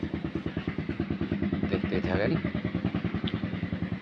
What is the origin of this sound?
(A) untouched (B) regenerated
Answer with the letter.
A